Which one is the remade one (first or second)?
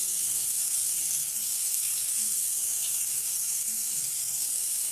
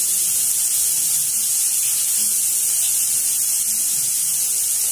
first